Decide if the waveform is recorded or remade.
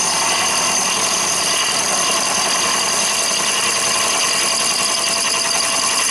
recorded